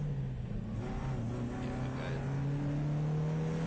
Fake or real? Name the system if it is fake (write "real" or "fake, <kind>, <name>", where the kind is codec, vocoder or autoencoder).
real